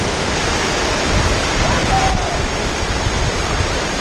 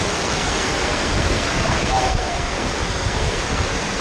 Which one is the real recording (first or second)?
first